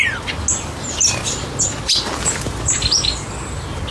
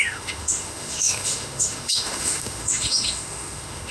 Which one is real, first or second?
first